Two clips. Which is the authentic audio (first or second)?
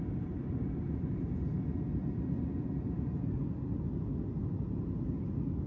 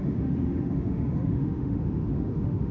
first